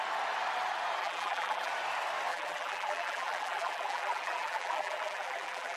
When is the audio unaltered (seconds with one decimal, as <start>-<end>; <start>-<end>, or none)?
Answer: 0.0-1.0; 1.7-2.3